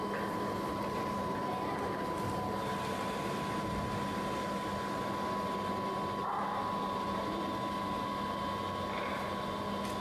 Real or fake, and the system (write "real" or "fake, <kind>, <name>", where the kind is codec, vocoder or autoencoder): real